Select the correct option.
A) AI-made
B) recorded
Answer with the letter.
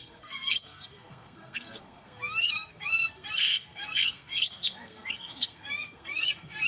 A